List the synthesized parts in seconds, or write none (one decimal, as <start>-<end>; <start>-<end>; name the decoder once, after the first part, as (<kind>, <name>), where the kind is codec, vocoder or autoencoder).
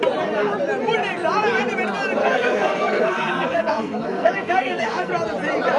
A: 2.2-5.1 (codec, SNAC)